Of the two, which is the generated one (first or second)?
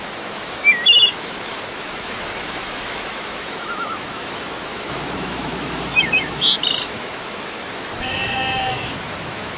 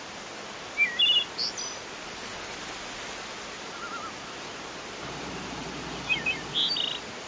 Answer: first